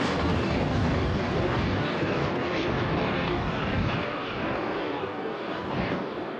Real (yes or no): no